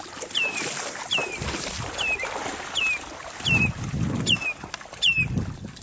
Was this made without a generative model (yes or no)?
yes